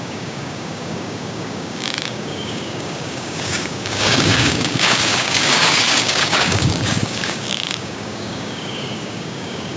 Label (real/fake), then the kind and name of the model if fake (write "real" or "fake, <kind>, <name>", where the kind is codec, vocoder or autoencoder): fake, codec, DAC